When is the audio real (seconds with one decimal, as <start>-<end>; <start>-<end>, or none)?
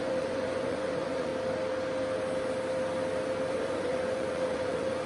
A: 1.3-3.5